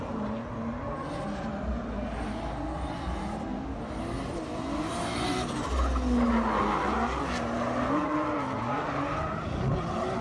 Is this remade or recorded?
recorded